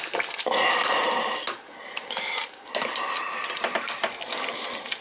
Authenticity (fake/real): real